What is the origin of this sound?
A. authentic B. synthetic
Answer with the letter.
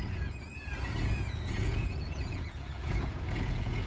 B